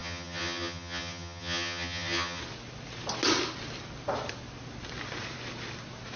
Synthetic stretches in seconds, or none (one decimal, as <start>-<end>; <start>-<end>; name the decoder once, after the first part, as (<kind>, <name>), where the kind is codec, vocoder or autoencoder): 0.0-2.4 (vocoder, HiFi-GAN)